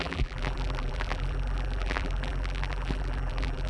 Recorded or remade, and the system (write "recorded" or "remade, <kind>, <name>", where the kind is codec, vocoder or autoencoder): remade, vocoder, BigVGAN v2